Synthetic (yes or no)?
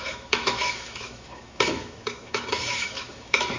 yes